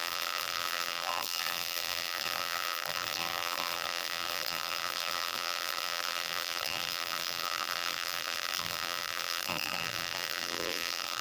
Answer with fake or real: fake